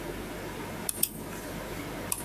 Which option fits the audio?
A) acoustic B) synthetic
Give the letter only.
A